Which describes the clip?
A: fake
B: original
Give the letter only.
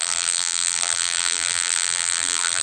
A